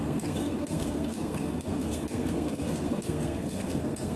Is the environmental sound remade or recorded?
remade